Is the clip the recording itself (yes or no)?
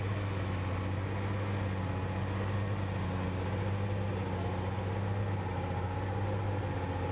yes